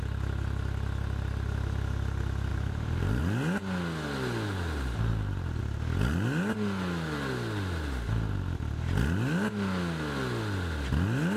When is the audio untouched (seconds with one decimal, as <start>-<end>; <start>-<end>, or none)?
0.0-2.5; 3.2-5.1; 5.6-11.4